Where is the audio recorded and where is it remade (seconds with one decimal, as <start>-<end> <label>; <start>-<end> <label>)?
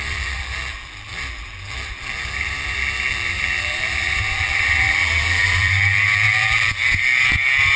0.0-6.8 remade; 6.8-7.8 recorded